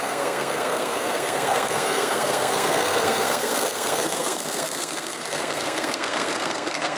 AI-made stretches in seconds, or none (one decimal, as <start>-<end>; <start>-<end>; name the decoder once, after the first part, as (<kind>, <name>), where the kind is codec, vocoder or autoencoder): 0.0-7.0 (codec, SNAC)